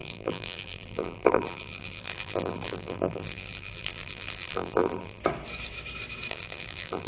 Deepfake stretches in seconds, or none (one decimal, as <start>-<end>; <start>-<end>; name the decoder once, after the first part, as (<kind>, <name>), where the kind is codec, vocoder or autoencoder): 0.0-5.2 (vocoder, BigVGAN v2); 6.3-7.1